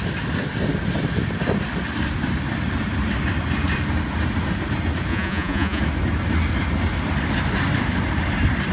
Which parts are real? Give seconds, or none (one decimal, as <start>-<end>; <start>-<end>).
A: 0.0-5.1; 5.8-8.7